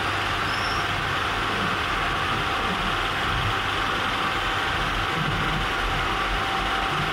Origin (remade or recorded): recorded